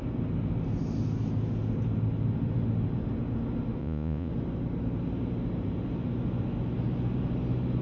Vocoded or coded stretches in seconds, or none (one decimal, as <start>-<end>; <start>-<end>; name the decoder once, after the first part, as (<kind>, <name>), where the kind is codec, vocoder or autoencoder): 3.8-4.3 (vocoder, Vocos)